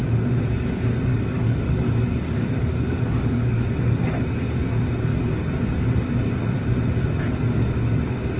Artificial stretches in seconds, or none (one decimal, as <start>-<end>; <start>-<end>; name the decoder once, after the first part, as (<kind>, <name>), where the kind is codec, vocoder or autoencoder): 1.1-3.7 (codec, DAC)